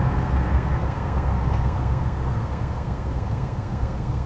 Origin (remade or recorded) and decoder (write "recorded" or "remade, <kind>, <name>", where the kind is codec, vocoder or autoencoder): remade, codec, SNAC